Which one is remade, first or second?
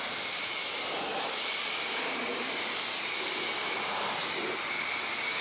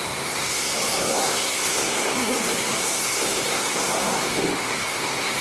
second